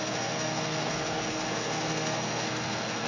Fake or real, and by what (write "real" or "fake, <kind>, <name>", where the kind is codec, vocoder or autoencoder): fake, codec, SNAC